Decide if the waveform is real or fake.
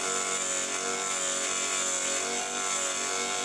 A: real